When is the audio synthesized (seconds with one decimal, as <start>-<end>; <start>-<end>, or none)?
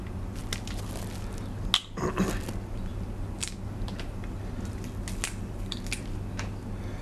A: none